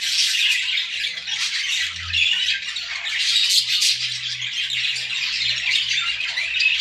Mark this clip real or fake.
real